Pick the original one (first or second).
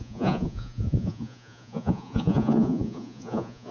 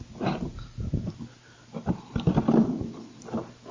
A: second